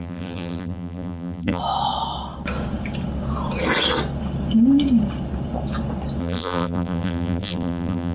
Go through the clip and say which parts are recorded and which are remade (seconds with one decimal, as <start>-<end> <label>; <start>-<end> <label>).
0.0-1.6 remade; 1.6-6.2 recorded; 6.2-8.1 remade